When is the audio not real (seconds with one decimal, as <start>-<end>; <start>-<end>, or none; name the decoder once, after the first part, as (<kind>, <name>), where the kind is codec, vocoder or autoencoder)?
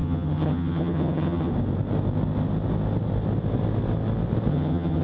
0.0-1.5 (vocoder, HiFi-GAN); 4.5-5.0